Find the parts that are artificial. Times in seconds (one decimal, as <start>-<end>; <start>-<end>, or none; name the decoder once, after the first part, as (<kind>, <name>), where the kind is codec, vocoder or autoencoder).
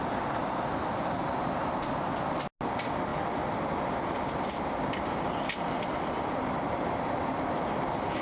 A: none